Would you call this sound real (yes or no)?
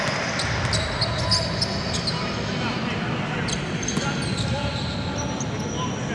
yes